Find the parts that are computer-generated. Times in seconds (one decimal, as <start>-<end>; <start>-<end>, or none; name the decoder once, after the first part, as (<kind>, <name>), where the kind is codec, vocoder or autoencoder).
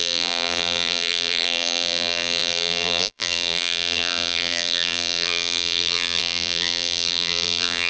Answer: 0.0-7.9 (vocoder, BigVGAN v2)